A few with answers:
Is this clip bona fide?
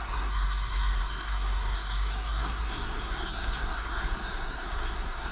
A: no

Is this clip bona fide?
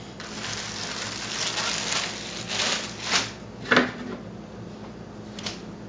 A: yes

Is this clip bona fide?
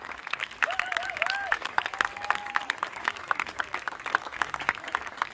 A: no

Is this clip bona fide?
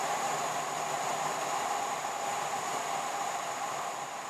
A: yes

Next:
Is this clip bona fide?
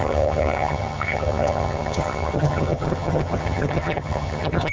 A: no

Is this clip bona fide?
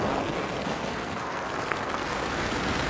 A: no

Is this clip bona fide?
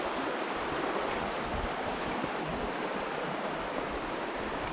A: yes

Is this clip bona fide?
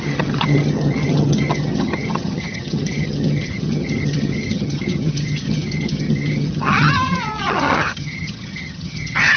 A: no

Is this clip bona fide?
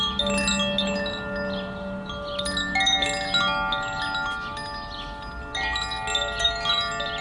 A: yes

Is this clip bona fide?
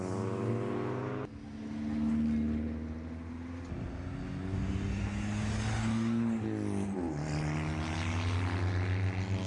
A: yes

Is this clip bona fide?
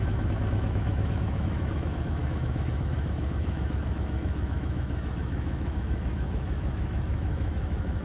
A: no